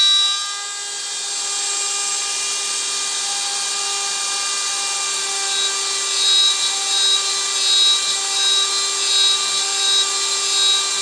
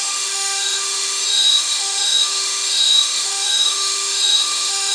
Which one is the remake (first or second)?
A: second